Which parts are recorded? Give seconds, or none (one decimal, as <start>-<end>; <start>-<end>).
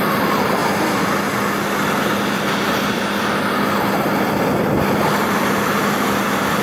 0.0-6.6